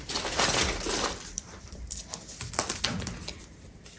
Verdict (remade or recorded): recorded